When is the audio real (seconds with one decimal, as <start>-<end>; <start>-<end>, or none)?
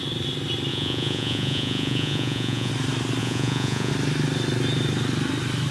0.0-0.7; 2.7-3.2; 3.9-5.7